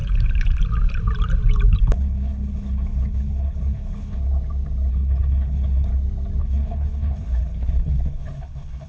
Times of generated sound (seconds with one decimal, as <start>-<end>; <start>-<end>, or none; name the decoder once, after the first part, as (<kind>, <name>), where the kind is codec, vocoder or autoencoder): 1.8-4.2 (codec, HILCodec); 4.9-5.9; 6.4-8.9